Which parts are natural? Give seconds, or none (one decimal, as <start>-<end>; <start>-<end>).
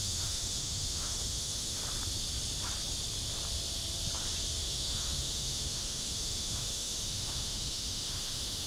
1.8-4.6